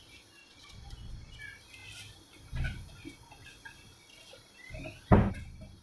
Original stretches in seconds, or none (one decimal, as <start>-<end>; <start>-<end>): 0.0-0.4; 1.4-5.8

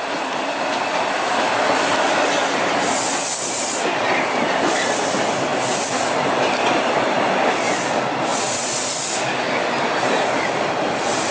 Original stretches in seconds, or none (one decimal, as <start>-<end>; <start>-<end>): 0.0-11.3

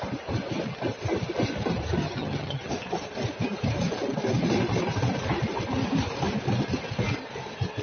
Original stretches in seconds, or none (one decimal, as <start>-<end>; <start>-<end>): 0.0-2.0; 2.7-7.8

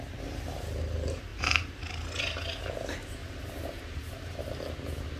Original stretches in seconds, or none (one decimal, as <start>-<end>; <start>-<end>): 0.0-1.3; 1.8-3.2; 4.4-5.2

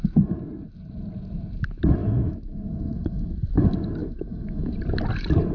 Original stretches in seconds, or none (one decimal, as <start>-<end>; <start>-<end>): 0.0-2.0; 3.3-4.0; 4.7-5.5

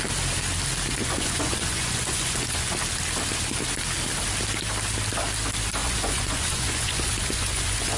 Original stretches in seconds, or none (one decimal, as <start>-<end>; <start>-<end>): 0.0-1.0; 2.7-5.8